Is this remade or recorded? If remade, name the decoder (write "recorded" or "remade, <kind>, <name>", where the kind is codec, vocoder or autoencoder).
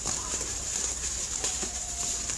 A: remade, vocoder, BigVGAN v2